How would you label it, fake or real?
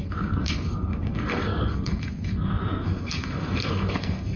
fake